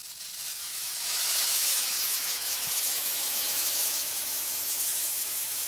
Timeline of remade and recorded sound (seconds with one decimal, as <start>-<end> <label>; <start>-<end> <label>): 0.0-0.6 recorded; 0.6-5.7 remade